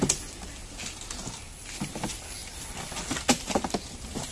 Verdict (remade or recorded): recorded